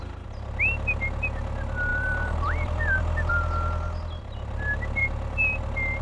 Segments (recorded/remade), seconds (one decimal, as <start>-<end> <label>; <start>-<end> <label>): 0.0-1.9 recorded; 1.9-3.3 remade; 3.3-5.0 recorded; 5.0-5.6 remade; 5.6-6.0 recorded